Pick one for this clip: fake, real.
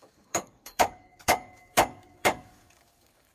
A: fake